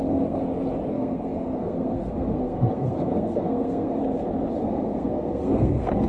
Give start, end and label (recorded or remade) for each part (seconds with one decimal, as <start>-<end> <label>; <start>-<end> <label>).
0.0-0.4 remade; 0.4-0.9 recorded; 0.9-4.0 remade; 4.0-4.5 recorded; 4.5-6.1 remade